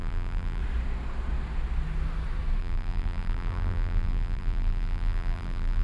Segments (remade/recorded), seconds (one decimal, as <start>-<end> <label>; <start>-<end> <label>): 0.0-0.6 remade; 0.6-2.6 recorded; 2.6-5.8 remade